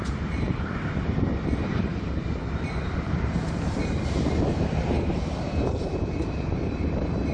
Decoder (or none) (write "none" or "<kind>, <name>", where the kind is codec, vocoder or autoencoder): vocoder, BigVGAN v2